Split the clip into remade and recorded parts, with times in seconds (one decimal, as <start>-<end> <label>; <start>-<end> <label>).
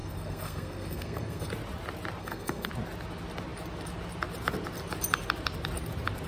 0.0-1.5 remade; 1.5-2.2 recorded; 2.2-2.7 remade; 2.7-6.3 recorded